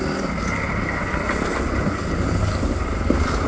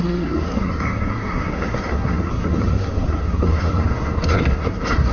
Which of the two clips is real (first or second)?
first